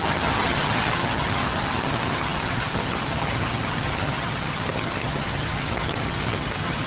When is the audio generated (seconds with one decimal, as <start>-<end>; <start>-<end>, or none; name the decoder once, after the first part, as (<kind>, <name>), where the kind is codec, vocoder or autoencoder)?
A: 0.0-6.9 (vocoder, HiFi-GAN)

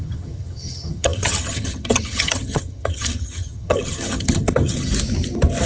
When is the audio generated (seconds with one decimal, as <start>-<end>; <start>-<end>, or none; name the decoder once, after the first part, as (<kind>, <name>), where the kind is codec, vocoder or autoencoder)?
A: 0.0-4.9 (vocoder, HiFi-GAN)

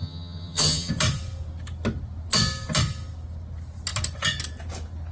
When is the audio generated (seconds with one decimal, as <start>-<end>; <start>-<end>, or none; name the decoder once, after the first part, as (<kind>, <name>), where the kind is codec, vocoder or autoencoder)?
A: 0.0-0.9 (vocoder, HiFi-GAN)